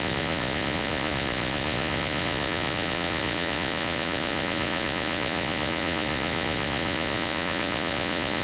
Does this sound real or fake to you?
fake